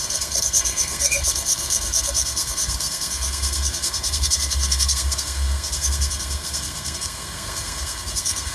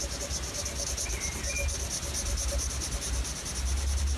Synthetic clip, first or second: first